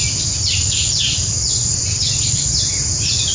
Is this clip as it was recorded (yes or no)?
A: yes